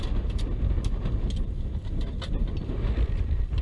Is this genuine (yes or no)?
yes